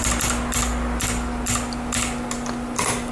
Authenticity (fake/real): real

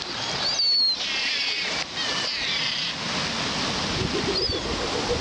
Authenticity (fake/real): real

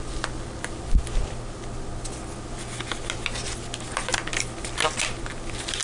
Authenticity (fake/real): real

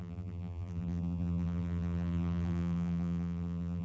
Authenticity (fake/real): fake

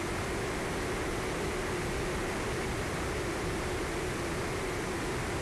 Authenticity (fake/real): real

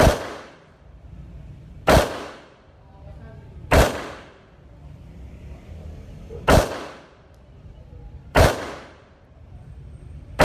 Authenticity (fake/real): fake